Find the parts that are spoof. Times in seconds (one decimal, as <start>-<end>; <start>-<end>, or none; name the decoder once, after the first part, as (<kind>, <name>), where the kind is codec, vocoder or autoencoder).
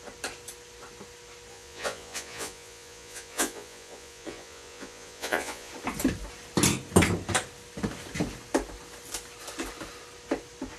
1.5-5.7 (vocoder, Vocos)